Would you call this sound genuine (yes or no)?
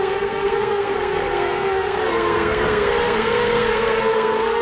no